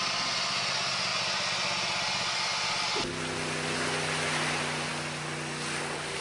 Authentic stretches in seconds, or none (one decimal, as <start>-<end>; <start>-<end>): 0.0-6.2